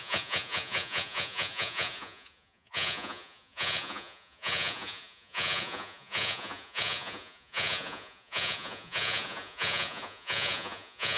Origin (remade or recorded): remade